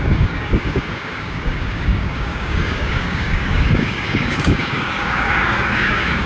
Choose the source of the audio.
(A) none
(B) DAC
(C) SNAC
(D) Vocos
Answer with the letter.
B